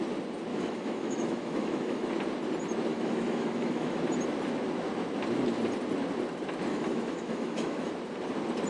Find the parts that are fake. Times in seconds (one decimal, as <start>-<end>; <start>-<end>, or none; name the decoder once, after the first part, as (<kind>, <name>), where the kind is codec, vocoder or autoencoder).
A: 0.5-2.1 (autoencoder, DAC-VAE); 2.9-4.0; 6.7-7.9